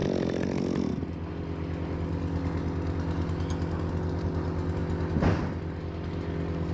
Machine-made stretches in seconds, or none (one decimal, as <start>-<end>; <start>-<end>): none